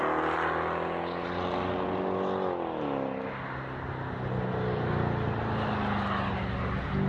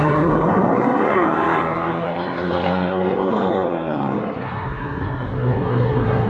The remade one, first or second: second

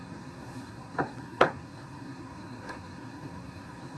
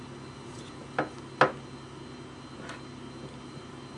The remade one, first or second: first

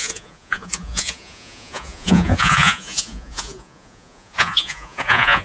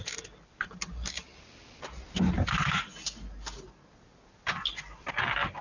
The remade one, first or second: first